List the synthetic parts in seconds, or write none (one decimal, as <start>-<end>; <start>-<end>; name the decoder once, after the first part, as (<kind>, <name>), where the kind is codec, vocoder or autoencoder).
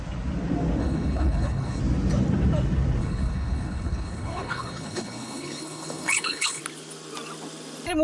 0.8-1.8 (codec, HILCodec); 3.0-6.6